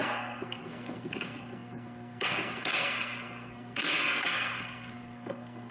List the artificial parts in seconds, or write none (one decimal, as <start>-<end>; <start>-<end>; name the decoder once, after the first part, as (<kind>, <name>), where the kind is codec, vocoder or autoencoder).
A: 0.0-5.7 (codec, SNAC)